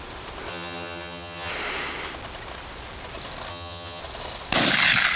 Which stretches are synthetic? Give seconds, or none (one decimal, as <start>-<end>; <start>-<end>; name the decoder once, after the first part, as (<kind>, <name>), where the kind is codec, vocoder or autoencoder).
0.5-1.5 (vocoder, HiFi-GAN); 3.5-4.0